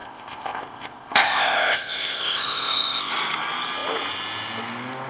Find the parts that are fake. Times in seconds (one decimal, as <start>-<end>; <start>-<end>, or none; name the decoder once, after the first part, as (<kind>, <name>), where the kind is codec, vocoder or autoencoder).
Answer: 0.0-3.1 (codec, ZipCodec)